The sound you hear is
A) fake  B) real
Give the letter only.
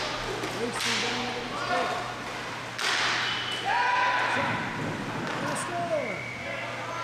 B